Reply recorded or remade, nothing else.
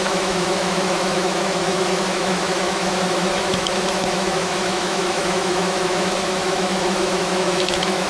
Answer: remade